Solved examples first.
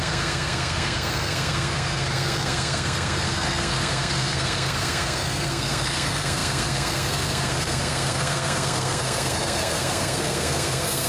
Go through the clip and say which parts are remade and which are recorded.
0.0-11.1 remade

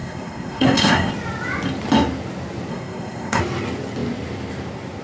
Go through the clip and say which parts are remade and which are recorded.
0.0-1.1 remade; 1.1-2.7 recorded; 2.7-3.4 remade; 3.4-5.0 recorded

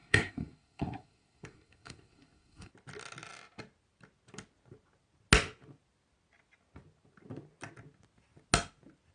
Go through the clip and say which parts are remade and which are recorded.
0.0-2.7 remade; 2.7-9.1 recorded

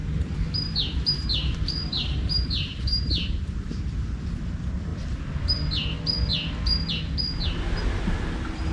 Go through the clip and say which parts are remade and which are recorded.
0.0-3.4 remade; 3.4-8.7 recorded

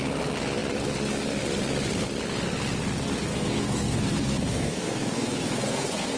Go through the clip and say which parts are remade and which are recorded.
0.0-3.3 recorded; 3.3-6.2 remade